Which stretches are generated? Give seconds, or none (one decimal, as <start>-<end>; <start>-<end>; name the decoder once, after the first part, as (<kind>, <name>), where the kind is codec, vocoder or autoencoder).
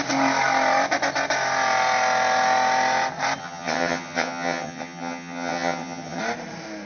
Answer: 3.4-6.2 (vocoder, HiFi-GAN)